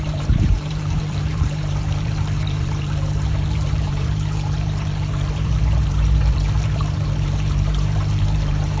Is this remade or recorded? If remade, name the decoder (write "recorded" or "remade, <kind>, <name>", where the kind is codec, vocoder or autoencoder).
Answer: remade, vocoder, BigVGAN v2